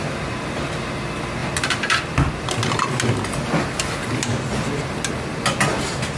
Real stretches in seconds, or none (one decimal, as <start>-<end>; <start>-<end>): 0.0-6.2